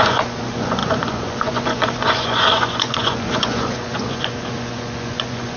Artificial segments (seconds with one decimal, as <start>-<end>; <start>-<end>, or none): 0.0-5.6